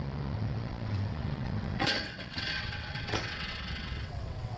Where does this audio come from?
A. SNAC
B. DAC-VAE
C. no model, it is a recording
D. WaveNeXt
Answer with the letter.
D